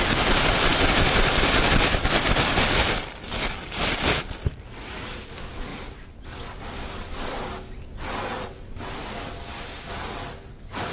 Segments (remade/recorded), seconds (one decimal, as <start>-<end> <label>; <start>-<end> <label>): 0.0-3.3 recorded; 3.3-3.9 remade; 3.9-10.9 recorded